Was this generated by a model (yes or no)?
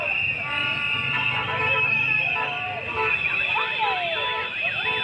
no